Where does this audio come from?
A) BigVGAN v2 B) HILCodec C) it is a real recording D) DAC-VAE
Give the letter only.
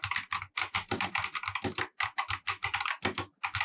C